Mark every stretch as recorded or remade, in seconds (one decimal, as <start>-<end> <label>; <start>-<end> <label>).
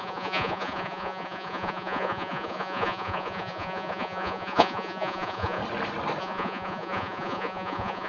0.0-5.6 remade; 5.6-6.2 recorded; 6.2-8.1 remade